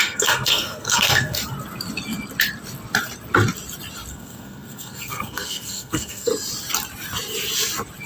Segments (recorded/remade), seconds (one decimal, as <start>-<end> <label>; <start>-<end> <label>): 0.0-1.4 remade; 1.4-4.1 recorded; 4.1-6.3 remade; 6.3-8.1 recorded